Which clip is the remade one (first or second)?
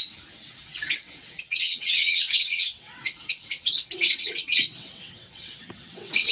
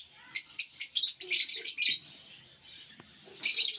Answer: first